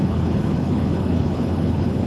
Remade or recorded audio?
remade